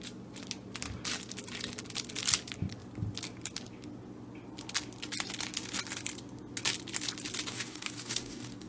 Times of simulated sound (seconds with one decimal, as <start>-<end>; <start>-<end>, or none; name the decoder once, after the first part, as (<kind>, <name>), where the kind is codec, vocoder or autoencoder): 7.5-8.7 (codec, DAC)